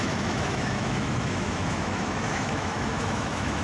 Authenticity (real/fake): fake